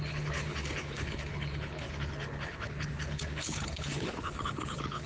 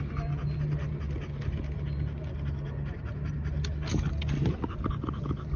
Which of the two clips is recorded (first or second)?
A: second